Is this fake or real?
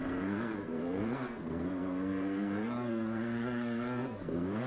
fake